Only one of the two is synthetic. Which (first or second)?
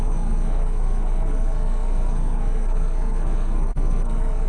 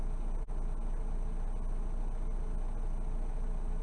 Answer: first